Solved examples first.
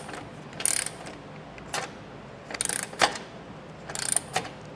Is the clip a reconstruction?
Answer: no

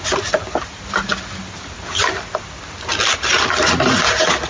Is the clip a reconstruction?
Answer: no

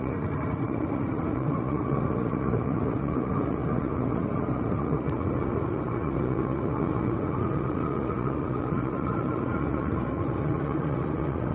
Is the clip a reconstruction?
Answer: yes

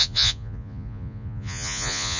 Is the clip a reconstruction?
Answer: yes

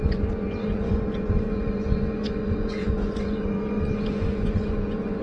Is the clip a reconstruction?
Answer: yes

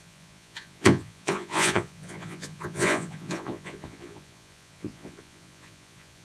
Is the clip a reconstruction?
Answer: yes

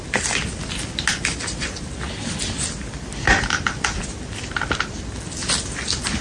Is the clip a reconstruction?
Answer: no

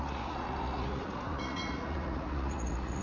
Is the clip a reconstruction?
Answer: yes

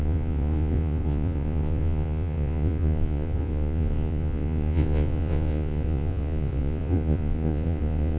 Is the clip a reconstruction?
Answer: yes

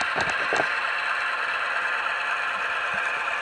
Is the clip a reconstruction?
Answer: no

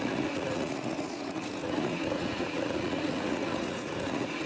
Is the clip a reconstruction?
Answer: yes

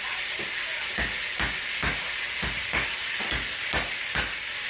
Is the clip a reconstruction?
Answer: no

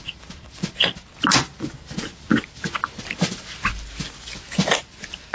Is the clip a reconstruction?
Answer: no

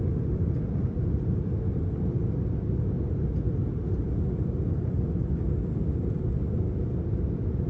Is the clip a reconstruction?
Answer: no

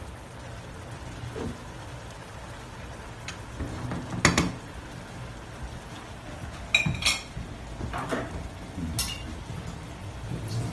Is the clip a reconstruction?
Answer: no